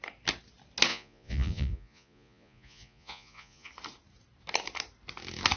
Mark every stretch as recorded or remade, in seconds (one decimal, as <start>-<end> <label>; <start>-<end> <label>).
0.0-0.9 recorded; 0.9-3.7 remade; 3.7-5.6 recorded